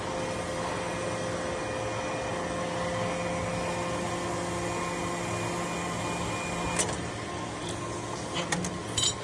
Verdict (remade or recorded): recorded